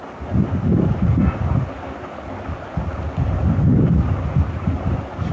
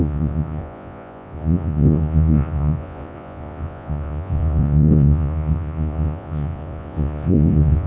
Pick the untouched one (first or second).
first